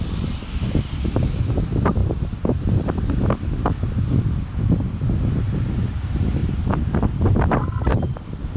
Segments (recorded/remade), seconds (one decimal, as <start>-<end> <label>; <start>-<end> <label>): 0.0-8.6 recorded